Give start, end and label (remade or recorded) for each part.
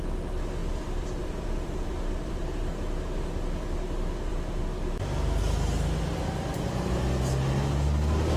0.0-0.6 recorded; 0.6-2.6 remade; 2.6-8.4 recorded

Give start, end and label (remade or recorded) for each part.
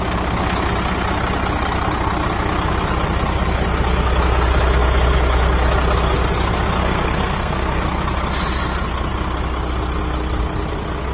0.0-6.8 recorded; 6.8-7.8 remade; 7.8-11.1 recorded